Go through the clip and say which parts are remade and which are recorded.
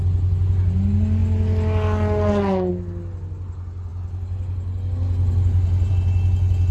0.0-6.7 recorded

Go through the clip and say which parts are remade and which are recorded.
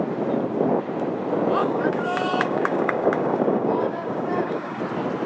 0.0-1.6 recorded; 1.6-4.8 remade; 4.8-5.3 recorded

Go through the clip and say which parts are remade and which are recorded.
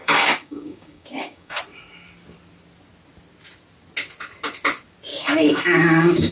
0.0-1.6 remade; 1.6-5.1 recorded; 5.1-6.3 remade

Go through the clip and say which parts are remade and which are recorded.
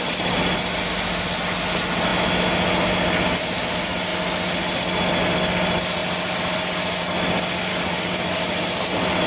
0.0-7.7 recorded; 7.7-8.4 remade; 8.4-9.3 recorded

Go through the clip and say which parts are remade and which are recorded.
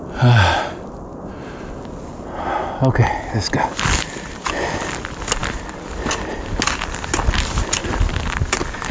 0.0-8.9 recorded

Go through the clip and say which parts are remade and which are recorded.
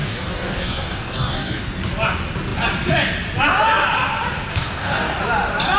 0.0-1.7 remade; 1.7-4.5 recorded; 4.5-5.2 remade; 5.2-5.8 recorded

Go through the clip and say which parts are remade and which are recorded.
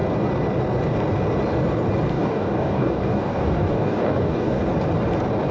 0.0-2.1 recorded; 2.1-4.6 remade; 4.6-5.5 recorded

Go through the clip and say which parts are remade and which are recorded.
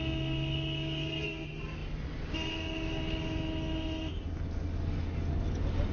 0.0-5.9 recorded